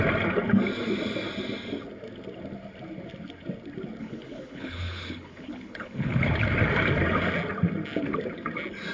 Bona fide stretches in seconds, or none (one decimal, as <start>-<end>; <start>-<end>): 0.0-4.0; 6.3-8.9